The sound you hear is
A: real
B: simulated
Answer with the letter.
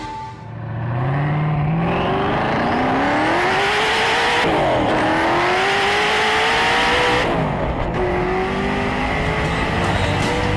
A